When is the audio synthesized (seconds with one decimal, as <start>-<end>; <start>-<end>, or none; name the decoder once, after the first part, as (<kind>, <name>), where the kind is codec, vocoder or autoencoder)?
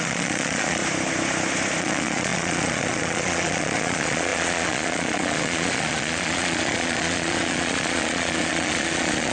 0.0-0.8 (vocoder, Vocos); 1.8-9.3